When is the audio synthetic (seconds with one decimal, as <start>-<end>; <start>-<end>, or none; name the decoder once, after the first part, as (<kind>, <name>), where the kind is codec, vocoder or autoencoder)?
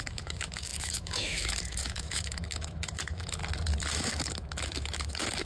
0.0-3.4 (autoencoder, DAC-VAE); 3.9-5.5